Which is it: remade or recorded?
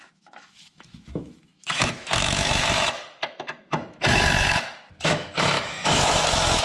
remade